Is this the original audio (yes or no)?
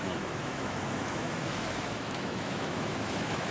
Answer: no